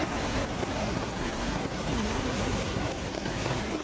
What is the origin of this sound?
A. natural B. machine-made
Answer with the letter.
B